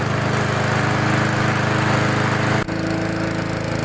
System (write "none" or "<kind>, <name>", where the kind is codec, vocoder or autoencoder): none